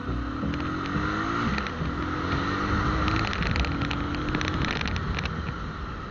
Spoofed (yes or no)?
no